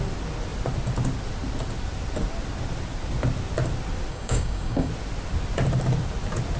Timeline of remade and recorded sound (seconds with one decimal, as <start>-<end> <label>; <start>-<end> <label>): 0.0-4.1 recorded; 4.1-4.9 remade; 4.9-6.6 recorded

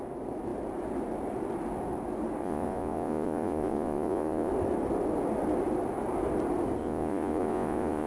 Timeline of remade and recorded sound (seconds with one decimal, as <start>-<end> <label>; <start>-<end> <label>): 0.0-2.4 recorded; 2.4-4.5 remade; 4.5-6.8 recorded; 6.8-8.1 remade

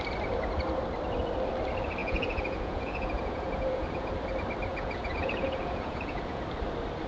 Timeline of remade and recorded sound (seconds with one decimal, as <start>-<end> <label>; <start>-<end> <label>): 0.0-2.0 recorded; 2.0-4.1 remade; 4.1-4.7 recorded; 4.7-6.4 remade; 6.4-7.1 recorded

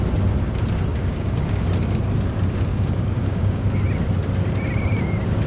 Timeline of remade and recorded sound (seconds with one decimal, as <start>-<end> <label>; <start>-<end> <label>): 0.0-0.9 recorded; 0.9-1.6 remade; 1.6-2.7 recorded; 2.7-3.8 remade; 3.8-5.5 recorded

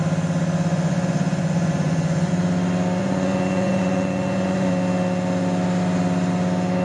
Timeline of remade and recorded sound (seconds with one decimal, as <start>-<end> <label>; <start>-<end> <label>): 0.0-0.7 recorded; 0.7-2.3 remade; 2.3-3.0 recorded; 3.0-4.7 remade; 4.7-6.8 recorded

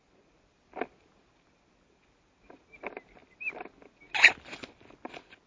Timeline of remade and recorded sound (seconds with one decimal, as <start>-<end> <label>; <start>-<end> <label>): 0.0-5.5 recorded

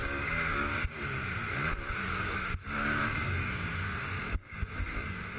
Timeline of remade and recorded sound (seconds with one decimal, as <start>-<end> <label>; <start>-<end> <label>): 0.0-1.0 remade; 1.0-2.1 recorded; 2.1-5.4 remade